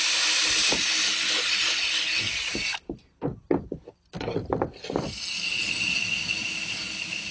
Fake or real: real